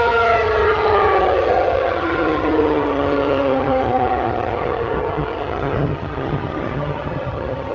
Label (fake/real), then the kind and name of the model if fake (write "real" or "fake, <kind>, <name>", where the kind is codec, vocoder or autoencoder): fake, vocoder, HiFi-GAN